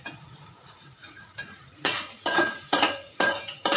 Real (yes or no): no